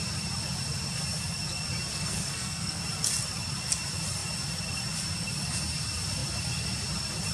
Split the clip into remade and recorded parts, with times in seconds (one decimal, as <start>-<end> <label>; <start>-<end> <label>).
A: 0.0-1.9 recorded; 1.9-2.8 remade; 2.8-7.3 recorded